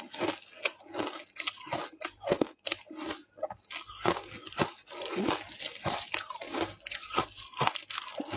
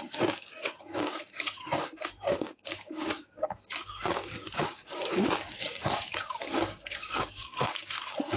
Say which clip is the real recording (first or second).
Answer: first